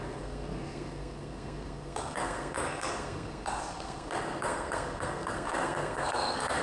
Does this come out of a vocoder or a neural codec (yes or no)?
yes